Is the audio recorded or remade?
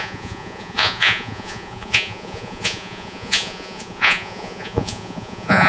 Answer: remade